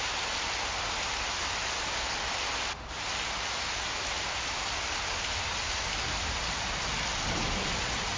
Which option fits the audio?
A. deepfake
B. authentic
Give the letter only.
B